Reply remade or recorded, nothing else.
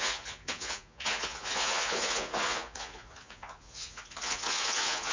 remade